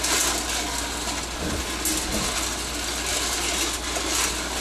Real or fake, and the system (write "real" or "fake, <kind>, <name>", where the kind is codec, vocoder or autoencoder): real